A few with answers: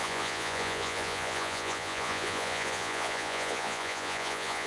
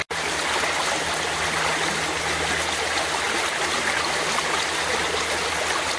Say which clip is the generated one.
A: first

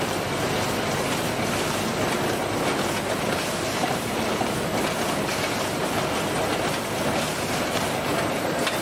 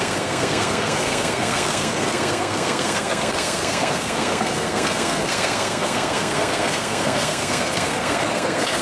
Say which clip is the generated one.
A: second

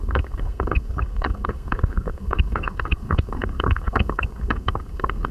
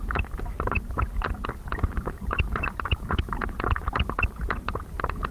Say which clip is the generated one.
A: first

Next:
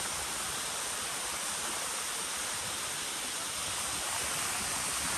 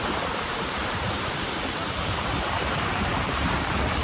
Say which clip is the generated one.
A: second